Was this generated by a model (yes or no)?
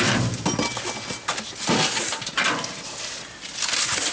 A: no